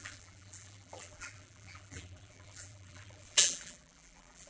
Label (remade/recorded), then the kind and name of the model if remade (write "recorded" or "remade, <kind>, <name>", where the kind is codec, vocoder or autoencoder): remade, vocoder, BigVGAN v2